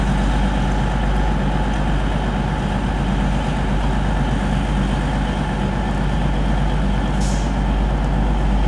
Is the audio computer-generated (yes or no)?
no